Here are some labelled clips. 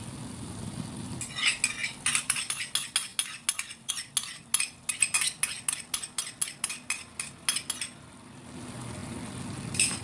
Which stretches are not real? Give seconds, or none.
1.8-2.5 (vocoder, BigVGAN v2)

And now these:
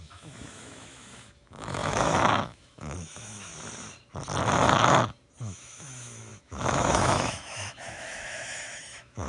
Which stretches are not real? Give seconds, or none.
0.0-3.5 (autoencoder, DAC-VAE); 5.4-9.3

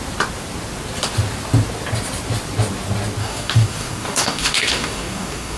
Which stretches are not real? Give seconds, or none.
3.2-5.6 (codec, DAC)